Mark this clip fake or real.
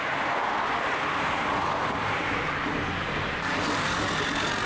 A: real